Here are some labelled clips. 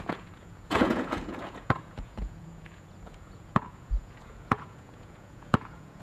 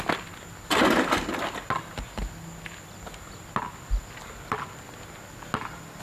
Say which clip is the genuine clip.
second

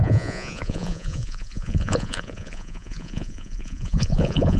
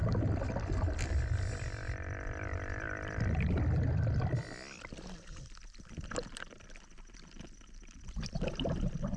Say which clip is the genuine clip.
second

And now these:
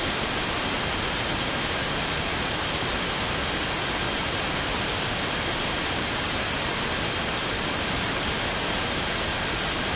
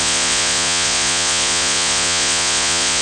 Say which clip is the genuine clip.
first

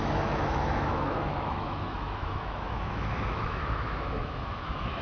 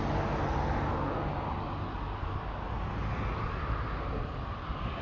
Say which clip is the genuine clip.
second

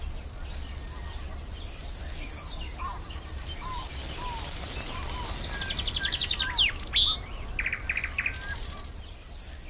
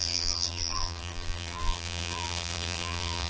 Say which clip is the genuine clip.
first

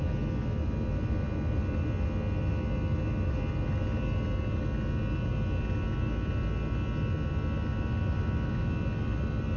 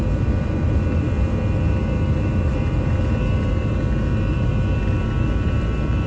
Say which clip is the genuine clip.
first